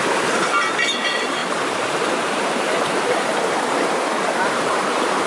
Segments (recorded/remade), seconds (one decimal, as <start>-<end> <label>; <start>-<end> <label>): 0.0-5.3 remade